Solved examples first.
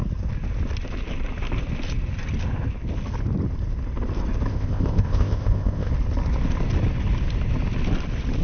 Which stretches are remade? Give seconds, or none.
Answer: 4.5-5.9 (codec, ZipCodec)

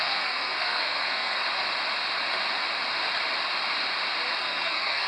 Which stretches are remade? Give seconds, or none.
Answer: 0.0-1.4 (codec, SNAC); 4.4-5.1